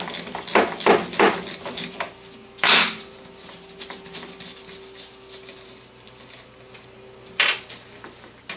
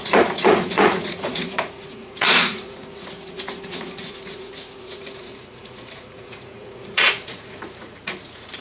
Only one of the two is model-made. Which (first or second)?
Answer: second